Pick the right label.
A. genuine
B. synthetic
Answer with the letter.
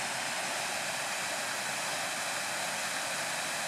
A